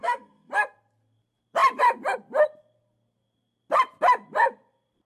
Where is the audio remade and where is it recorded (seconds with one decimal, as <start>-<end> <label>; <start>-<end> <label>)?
0.0-0.5 remade; 0.5-5.1 recorded